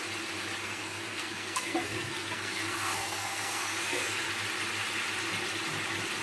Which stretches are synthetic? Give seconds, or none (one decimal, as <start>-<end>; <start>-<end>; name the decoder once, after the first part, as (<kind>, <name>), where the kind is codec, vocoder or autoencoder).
0.6-4.3 (codec, SNAC)